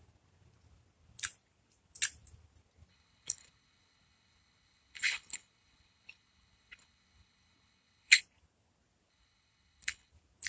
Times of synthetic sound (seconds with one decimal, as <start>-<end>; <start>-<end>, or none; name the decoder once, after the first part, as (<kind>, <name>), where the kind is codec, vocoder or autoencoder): 2.9-8.2 (codec, HILCodec); 9.1-10.1